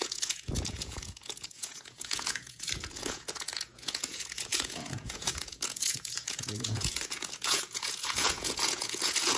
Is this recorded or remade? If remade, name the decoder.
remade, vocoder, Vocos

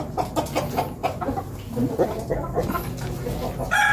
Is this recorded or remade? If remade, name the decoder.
recorded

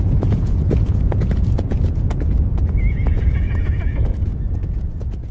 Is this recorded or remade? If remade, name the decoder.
remade, vocoder, Vocos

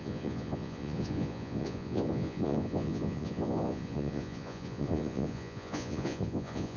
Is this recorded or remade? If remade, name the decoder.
remade, vocoder, Vocos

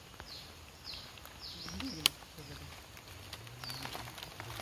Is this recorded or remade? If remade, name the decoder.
recorded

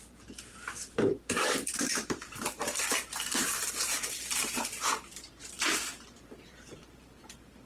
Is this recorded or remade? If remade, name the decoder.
remade, vocoder, BigVGAN v2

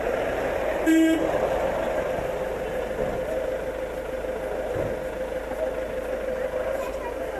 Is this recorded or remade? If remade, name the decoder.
recorded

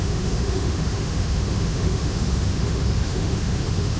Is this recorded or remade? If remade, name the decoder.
remade, autoencoder, DAC-VAE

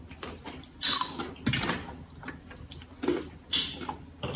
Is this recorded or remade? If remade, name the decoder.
recorded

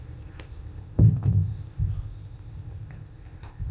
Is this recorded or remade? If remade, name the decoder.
remade, codec, ZipCodec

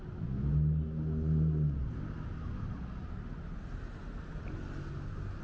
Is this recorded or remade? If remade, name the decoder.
recorded